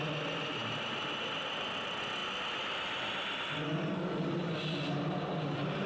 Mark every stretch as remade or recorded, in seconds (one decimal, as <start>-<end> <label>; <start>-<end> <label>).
0.0-5.9 recorded